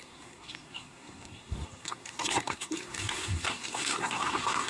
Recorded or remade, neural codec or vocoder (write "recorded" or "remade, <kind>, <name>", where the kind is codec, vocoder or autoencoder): remade, codec, SNAC